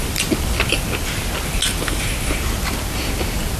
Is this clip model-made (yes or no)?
no